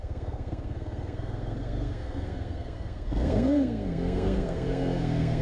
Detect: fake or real fake